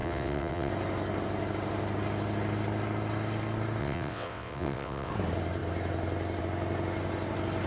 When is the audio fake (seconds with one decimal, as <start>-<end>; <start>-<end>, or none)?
0.0-0.7; 3.8-5.1